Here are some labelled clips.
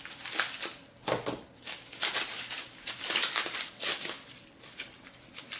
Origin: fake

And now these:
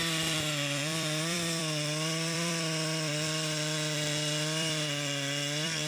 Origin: fake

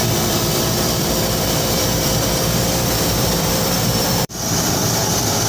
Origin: fake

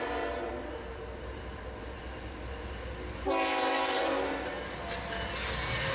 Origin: real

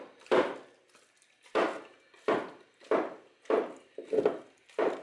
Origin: real